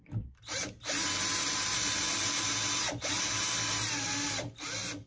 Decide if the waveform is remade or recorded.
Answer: recorded